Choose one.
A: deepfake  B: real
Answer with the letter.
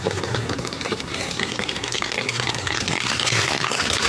A